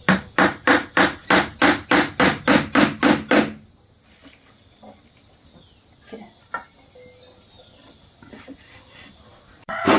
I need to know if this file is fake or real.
real